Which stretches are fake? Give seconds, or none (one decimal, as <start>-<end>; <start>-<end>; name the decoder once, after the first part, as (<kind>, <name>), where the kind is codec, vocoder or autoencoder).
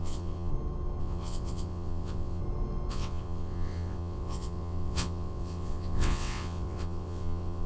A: 0.0-0.5 (vocoder, WaveNeXt); 1.0-2.4; 2.9-7.7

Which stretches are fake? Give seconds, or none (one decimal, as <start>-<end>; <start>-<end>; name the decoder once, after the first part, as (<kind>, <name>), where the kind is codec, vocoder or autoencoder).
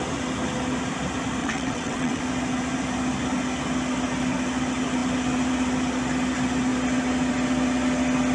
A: 1.4-2.2 (vocoder, WaveNeXt)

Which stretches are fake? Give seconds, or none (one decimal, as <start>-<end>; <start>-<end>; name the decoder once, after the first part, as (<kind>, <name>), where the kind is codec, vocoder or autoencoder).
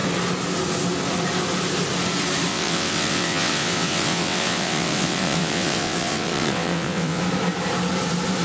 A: 2.5-7.2 (vocoder, WaveNeXt)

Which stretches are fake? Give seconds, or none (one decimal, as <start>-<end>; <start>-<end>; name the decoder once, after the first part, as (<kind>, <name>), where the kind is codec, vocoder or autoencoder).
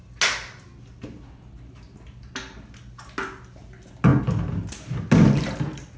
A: none